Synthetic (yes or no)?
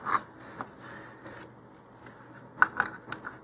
no